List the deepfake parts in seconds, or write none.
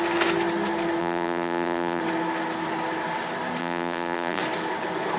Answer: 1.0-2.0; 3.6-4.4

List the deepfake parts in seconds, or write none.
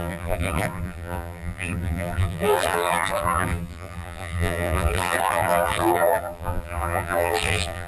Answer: 0.0-7.9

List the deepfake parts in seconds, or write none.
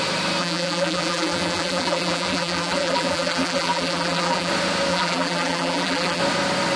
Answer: 0.4-4.5; 4.9-6.2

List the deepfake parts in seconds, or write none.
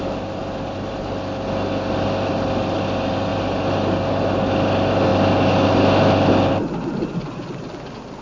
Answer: 0.4-0.9; 3.3-4.4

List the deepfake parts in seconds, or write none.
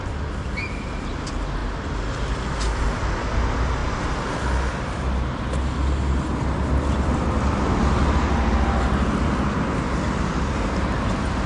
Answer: none